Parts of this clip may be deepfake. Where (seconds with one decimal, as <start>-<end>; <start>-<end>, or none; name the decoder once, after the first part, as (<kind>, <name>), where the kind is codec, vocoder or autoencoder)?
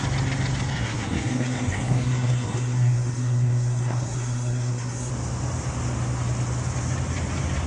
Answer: 0.7-5.1 (codec, SNAC)